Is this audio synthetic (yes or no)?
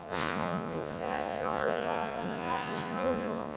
yes